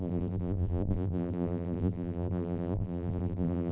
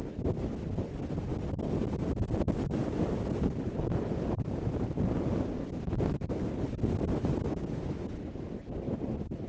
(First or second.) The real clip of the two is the second